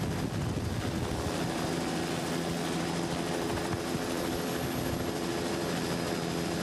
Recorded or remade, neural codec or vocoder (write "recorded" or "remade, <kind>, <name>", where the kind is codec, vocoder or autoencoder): recorded